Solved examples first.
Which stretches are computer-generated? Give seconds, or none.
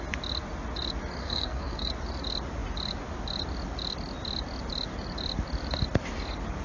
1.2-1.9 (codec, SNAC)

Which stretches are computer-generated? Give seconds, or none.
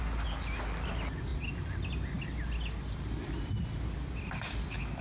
none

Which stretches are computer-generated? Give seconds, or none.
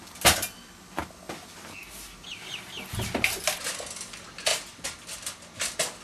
none